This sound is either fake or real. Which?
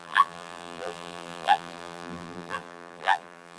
fake